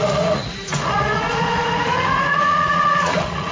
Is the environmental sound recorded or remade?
remade